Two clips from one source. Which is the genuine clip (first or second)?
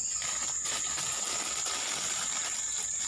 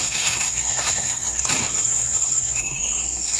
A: first